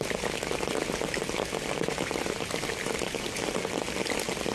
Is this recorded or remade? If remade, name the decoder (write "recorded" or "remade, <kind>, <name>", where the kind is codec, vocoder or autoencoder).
recorded